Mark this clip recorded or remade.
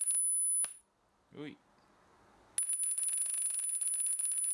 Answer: recorded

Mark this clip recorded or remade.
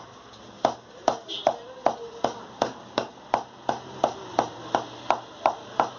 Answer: recorded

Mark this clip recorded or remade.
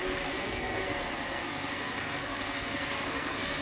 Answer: remade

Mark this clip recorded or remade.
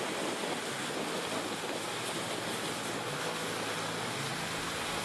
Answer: recorded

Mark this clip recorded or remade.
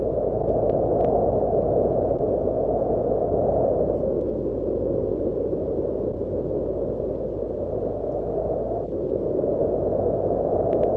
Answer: recorded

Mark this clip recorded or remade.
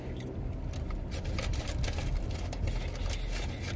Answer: recorded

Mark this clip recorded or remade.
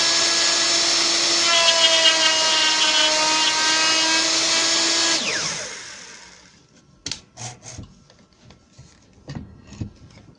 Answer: recorded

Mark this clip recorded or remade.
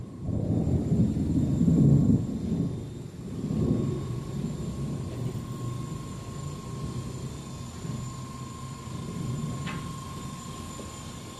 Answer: recorded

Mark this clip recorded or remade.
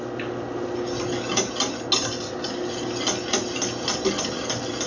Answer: recorded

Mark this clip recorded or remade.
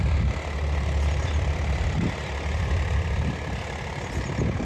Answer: recorded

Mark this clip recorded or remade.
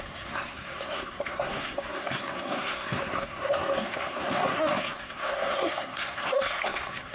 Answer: remade